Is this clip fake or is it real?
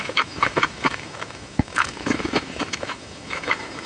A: fake